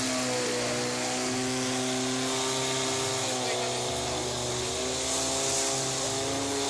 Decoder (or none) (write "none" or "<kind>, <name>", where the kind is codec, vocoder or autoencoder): none